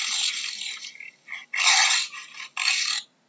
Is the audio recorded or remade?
recorded